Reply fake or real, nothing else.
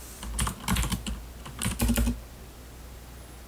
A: real